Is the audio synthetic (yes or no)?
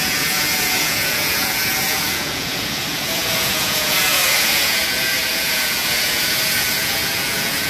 yes